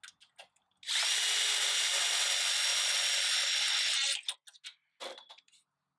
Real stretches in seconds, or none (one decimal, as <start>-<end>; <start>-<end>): 0.0-6.0